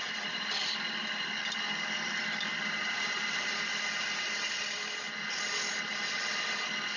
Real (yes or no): yes